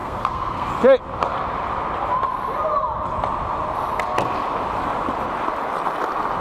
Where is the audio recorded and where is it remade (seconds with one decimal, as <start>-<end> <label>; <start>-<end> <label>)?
0.0-0.7 remade; 0.7-6.4 recorded